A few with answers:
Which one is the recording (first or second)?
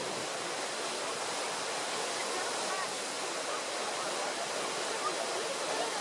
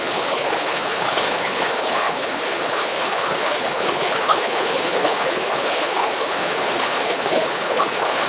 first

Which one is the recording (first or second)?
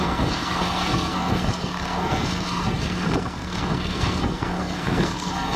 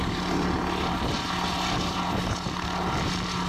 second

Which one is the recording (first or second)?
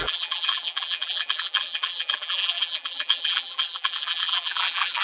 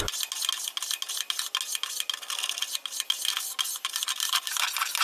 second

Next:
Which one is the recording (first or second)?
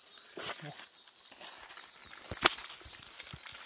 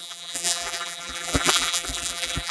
first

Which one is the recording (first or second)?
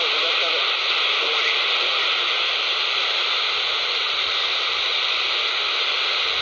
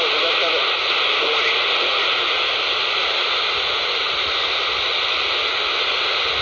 second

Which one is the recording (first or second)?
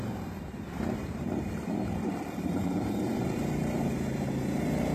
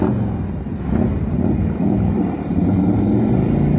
second